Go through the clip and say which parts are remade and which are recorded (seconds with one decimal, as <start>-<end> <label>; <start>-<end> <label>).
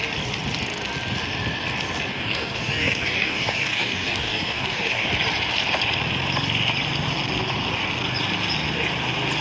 0.0-2.1 recorded; 2.1-5.1 remade; 5.1-9.4 recorded